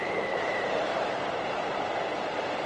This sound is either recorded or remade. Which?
remade